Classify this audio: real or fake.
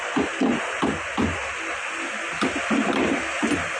real